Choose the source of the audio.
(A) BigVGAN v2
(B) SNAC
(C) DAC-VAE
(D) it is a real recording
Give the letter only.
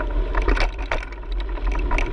D